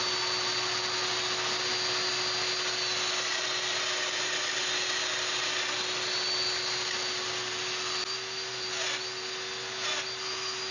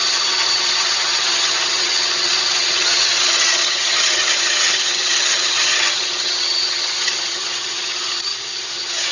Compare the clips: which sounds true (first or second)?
first